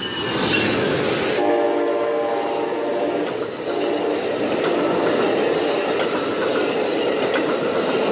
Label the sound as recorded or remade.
recorded